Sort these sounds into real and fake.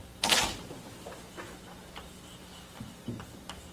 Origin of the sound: real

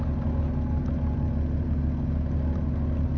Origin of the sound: real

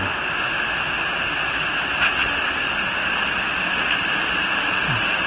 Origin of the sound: real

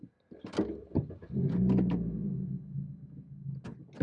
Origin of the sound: real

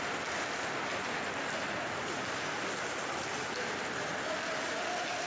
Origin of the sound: real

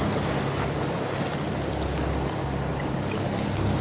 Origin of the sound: real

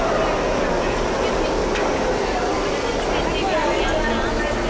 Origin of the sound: real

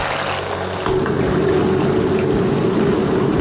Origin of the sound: real